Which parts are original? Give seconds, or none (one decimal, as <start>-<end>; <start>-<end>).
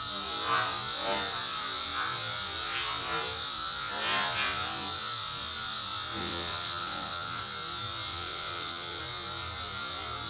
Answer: 0.0-6.2; 7.4-8.1; 9.0-10.3